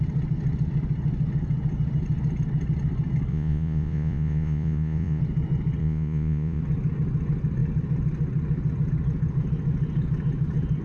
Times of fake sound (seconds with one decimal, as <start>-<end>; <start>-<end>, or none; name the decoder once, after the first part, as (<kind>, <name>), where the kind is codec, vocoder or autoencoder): 3.3-5.2 (vocoder, Vocos); 5.8-6.6